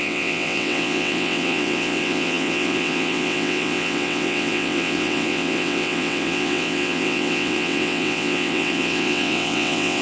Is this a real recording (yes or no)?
no